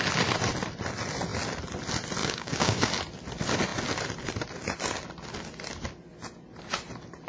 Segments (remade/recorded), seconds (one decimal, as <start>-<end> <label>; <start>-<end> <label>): 0.0-2.2 recorded; 2.2-2.9 remade; 2.9-7.3 recorded